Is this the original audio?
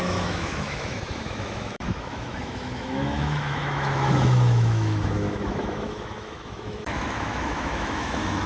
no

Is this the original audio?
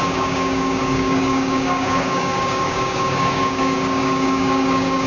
no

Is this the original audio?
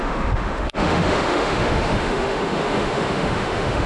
no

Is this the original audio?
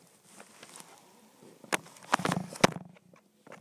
yes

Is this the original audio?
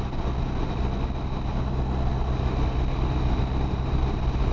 yes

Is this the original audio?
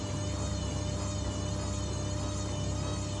yes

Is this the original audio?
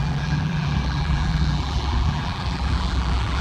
no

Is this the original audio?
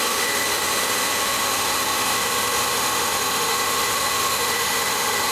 no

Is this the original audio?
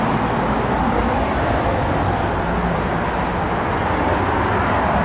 yes